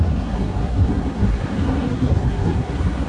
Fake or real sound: fake